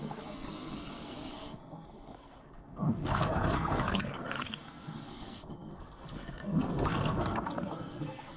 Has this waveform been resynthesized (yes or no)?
yes